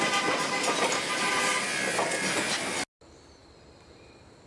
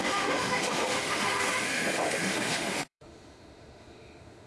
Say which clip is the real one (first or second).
first